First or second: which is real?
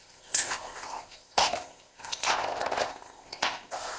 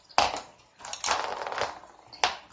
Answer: second